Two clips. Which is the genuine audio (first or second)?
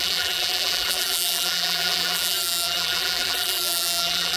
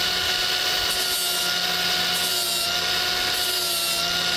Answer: second